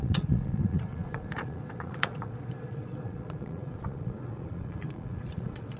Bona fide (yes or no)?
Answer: no